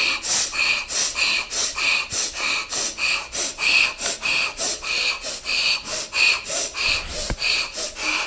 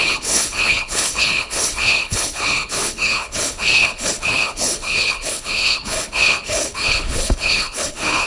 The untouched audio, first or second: first